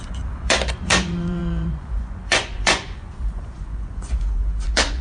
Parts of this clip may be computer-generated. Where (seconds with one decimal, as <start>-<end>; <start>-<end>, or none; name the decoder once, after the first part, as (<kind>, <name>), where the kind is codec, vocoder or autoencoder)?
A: 0.0-5.0 (vocoder, Vocos)